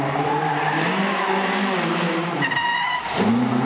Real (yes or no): no